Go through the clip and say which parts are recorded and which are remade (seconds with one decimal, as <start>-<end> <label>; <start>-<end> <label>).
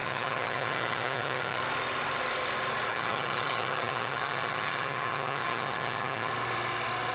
0.0-1.6 remade; 1.6-2.9 recorded; 2.9-6.3 remade; 6.3-7.1 recorded